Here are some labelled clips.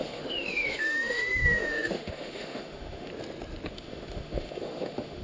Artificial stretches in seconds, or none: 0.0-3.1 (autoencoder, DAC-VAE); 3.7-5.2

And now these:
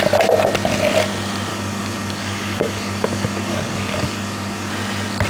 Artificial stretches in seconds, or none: 1.5-4.7 (codec, DAC)

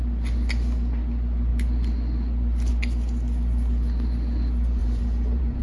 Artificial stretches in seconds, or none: 4.8-5.6 (vocoder, BigVGAN v2)

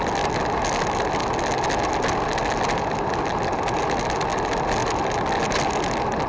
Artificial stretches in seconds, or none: none